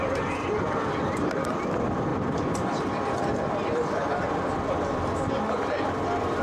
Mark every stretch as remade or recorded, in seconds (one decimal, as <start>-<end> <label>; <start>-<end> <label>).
0.0-6.4 recorded